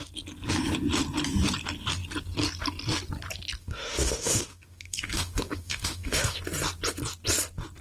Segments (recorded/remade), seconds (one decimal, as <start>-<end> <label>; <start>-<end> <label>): 0.0-3.6 recorded; 3.6-6.4 remade; 6.4-7.8 recorded